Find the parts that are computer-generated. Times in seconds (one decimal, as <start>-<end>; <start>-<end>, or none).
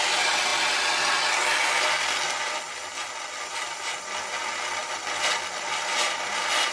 4.8-6.3